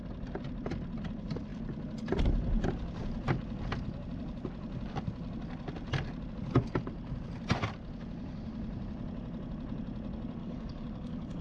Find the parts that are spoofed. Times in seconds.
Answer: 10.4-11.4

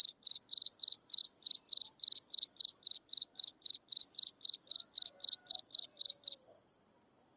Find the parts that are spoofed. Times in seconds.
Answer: none

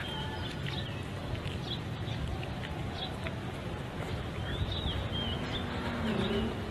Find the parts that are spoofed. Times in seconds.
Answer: 1.2-2.5; 3.6-6.2

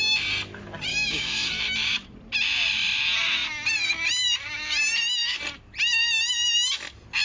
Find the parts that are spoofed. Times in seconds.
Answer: 0.9-1.5

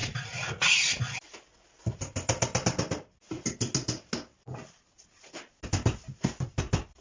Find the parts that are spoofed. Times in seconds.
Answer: none

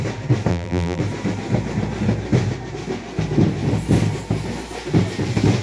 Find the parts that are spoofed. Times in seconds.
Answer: 0.5-1.0